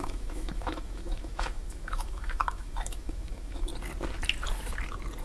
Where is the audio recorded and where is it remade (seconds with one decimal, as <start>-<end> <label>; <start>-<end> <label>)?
0.0-3.7 remade; 3.7-5.2 recorded